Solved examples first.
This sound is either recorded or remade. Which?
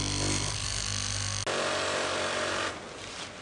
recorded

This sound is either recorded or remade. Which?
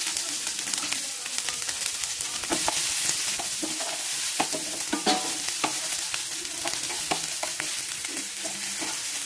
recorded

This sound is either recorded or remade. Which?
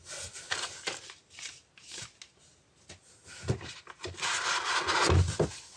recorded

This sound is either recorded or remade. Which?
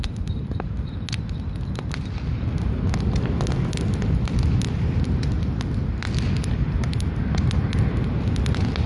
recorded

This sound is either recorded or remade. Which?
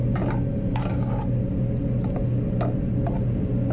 recorded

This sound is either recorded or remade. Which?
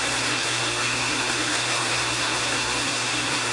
remade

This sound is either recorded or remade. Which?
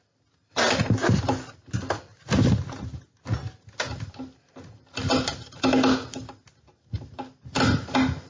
recorded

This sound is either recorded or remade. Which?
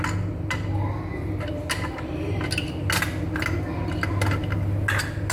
recorded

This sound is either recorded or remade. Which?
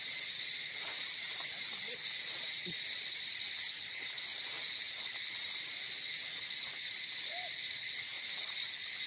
recorded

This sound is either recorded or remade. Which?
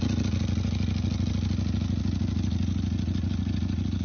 recorded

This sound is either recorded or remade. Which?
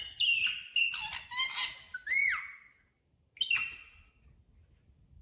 recorded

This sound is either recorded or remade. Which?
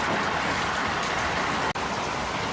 recorded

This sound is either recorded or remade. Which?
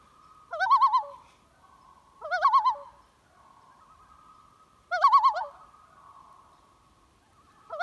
recorded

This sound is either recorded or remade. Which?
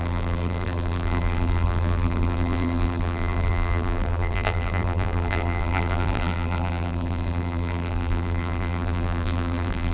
remade